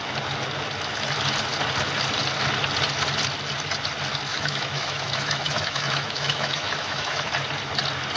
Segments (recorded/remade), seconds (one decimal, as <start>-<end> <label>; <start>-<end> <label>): 0.0-4.3 recorded; 4.3-7.3 remade; 7.3-8.2 recorded